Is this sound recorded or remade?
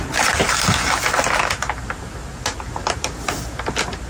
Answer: recorded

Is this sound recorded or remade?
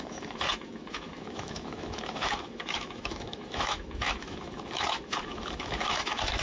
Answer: remade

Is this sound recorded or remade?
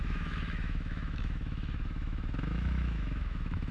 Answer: remade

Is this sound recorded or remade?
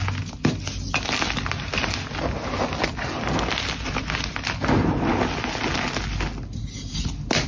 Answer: recorded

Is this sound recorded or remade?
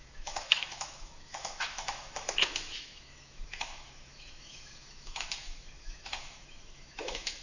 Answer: remade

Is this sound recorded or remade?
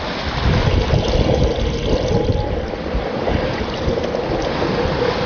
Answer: recorded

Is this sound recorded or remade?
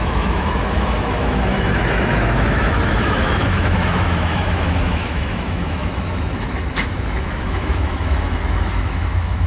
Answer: remade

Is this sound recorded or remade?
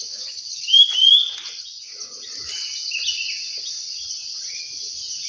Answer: recorded